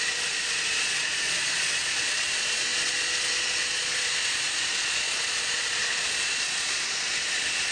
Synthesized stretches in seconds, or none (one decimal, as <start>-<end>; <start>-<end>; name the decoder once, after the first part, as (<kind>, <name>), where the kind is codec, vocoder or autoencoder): 0.0-7.7 (vocoder, Vocos)